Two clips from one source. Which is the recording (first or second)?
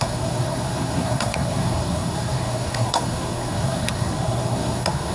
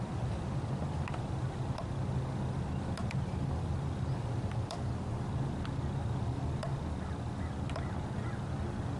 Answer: second